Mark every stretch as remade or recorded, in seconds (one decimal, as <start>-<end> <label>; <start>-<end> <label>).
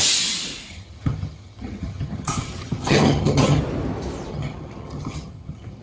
0.0-0.7 recorded; 0.7-3.6 remade; 3.6-4.3 recorded; 4.3-5.8 remade